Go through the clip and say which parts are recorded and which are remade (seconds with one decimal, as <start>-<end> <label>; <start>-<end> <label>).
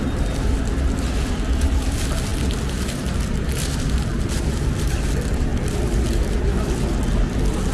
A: 0.0-5.5 recorded; 5.5-6.7 remade; 6.7-7.7 recorded